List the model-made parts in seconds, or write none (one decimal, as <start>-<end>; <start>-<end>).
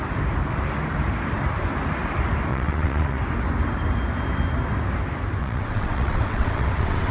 2.5-3.2; 5.4-7.1